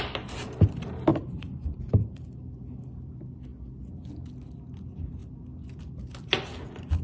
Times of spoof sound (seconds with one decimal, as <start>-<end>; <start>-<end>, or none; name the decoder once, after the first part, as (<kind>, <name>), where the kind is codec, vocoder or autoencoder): 1.1-2.4 (vocoder, BigVGAN v2)